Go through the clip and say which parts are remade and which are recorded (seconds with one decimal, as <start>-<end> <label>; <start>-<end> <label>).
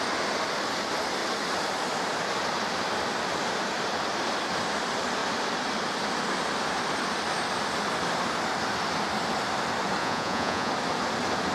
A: 0.0-10.0 recorded; 10.0-10.7 remade; 10.7-11.5 recorded